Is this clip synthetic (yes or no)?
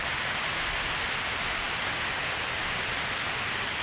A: no